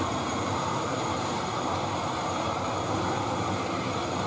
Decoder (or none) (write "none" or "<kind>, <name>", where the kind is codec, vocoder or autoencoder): vocoder, BigVGAN v2